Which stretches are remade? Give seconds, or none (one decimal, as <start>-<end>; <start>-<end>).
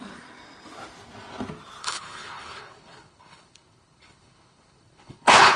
1.8-5.6